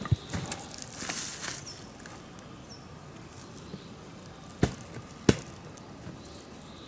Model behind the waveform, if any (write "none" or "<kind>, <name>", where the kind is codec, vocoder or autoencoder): none